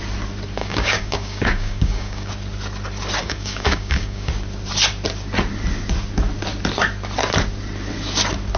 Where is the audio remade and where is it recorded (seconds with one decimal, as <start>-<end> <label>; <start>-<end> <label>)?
0.0-0.6 recorded; 0.6-2.3 remade; 2.3-3.2 recorded; 3.2-4.3 remade; 4.3-8.6 recorded